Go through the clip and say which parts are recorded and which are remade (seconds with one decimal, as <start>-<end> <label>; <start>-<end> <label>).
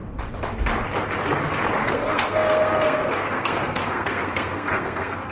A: 0.0-1.8 recorded; 1.8-5.3 remade